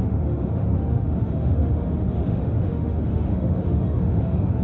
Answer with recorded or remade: remade